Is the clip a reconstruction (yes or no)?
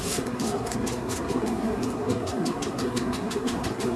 yes